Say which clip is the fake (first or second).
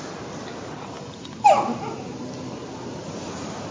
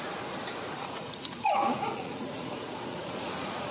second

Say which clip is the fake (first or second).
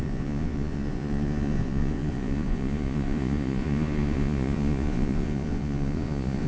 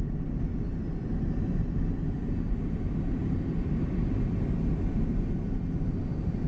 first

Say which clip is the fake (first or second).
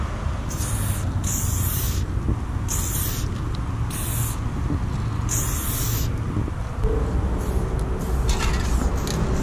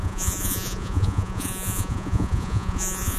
second